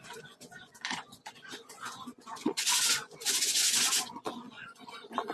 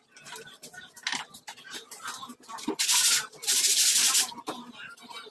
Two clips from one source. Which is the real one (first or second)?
second